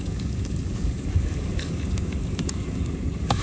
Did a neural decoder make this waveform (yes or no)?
yes